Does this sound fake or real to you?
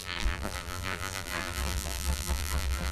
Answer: fake